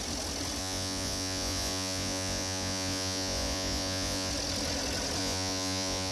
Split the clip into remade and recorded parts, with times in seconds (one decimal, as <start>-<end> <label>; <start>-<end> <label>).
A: 0.0-0.6 recorded; 0.6-4.3 remade; 4.3-5.2 recorded; 5.2-6.1 remade